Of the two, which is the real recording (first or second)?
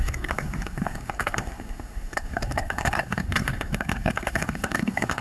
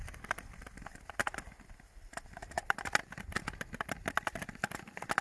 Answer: second